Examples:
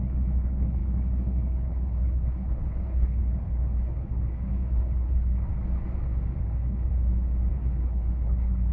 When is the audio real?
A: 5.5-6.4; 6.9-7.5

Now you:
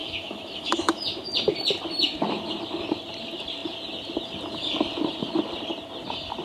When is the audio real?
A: 1.0-6.4

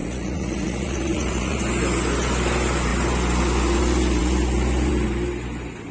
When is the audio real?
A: 1.6-5.9

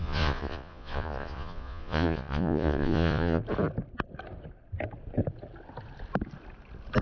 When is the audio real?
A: 3.4-7.0

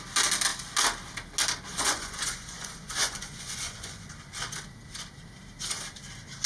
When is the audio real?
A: 0.0-1.7; 4.1-6.5